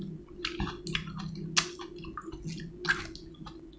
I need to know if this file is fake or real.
real